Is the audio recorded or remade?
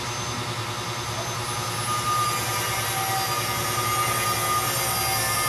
recorded